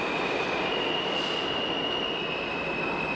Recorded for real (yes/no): yes